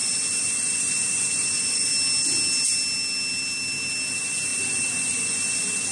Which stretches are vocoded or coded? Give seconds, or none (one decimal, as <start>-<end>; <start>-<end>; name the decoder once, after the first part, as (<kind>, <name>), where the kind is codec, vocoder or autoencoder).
0.0-1.9 (vocoder, Vocos); 4.1-5.9